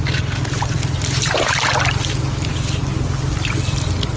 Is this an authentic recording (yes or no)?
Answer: yes